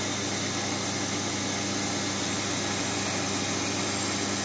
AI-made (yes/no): no